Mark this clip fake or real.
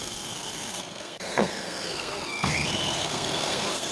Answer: fake